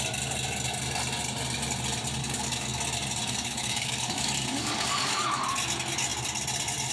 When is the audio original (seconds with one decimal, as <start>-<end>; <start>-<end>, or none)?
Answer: 0.0-2.2; 2.8-3.2; 5.5-6.9